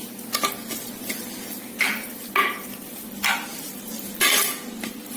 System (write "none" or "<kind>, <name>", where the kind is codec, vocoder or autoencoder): none